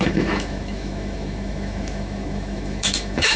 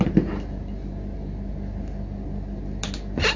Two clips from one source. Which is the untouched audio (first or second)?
second